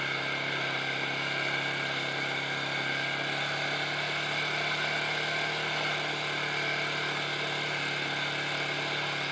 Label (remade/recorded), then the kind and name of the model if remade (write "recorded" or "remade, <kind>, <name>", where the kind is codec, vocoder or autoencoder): recorded